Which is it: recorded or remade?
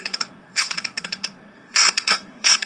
remade